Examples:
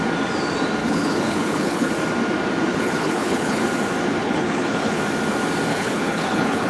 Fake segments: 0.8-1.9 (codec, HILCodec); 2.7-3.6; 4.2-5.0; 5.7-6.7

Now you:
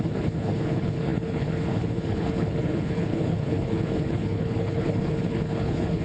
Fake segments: 0.0-6.0 (codec, HILCodec)